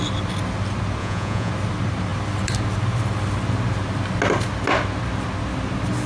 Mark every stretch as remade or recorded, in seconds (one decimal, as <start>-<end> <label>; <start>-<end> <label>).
0.0-1.0 recorded; 1.0-1.5 remade; 1.5-6.1 recorded